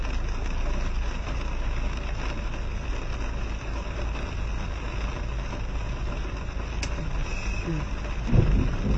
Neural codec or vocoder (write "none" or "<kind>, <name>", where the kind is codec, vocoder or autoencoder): none